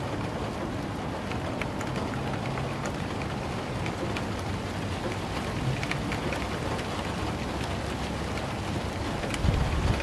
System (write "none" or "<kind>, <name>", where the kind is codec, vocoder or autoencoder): none